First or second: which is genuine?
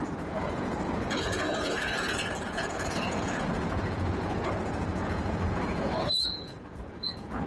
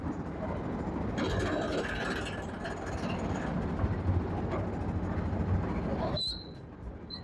second